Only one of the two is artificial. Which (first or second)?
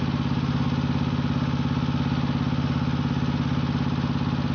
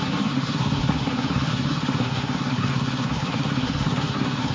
second